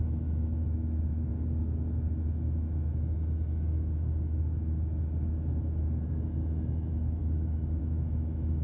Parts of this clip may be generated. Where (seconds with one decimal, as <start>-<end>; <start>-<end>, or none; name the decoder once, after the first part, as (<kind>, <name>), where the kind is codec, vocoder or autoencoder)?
0.0-1.3 (autoencoder, DAC-VAE); 6.1-8.6